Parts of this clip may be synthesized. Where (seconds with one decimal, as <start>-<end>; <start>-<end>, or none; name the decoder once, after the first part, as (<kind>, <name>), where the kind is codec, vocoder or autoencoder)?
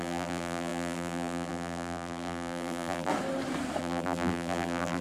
0.0-3.1 (vocoder, BigVGAN v2); 3.8-5.0